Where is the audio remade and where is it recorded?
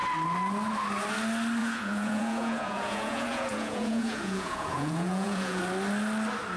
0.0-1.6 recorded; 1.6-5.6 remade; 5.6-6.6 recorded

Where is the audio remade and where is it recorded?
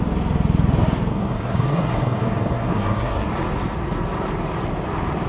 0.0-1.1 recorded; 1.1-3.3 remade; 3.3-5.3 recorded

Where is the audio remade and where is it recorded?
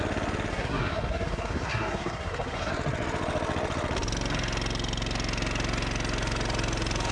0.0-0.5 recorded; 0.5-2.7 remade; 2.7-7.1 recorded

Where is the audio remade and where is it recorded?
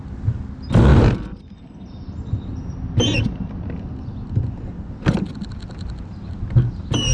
0.0-0.9 recorded; 0.9-1.8 remade; 1.8-7.1 recorded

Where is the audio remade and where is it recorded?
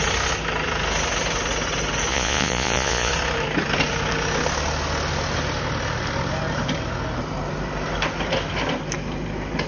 0.0-2.1 recorded; 2.1-3.1 remade; 3.1-9.7 recorded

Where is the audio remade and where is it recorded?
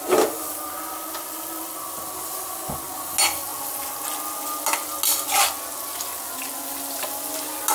0.0-7.7 recorded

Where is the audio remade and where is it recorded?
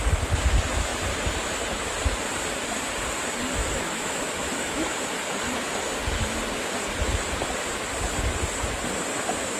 0.0-3.6 recorded; 3.6-5.0 remade; 5.0-9.6 recorded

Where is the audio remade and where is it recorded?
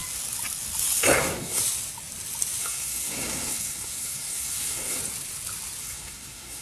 0.0-1.2 recorded; 1.2-1.6 remade; 1.6-2.6 recorded; 2.6-5.0 remade; 5.0-5.8 recorded; 5.8-6.6 remade